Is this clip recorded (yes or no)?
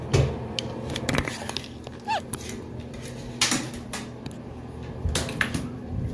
yes